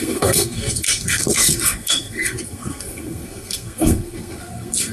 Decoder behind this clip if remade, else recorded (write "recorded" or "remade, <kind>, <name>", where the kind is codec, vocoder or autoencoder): remade, codec, SNAC